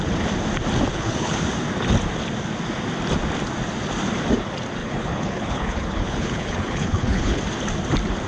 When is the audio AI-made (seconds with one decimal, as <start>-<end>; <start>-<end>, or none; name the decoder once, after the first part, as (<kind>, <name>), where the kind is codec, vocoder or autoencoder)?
0.9-1.4 (codec, HILCodec); 4.8-7.4